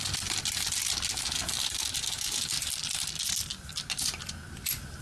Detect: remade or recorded recorded